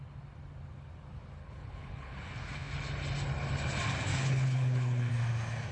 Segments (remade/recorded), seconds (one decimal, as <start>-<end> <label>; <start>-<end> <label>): 0.0-1.4 recorded; 1.4-2.3 remade; 2.3-4.1 recorded; 4.1-5.1 remade; 5.1-5.7 recorded